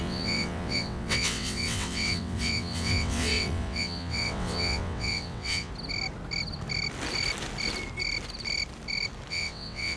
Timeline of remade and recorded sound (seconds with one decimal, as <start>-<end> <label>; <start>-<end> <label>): 0.0-5.7 remade; 5.7-9.3 recorded; 9.3-10.0 remade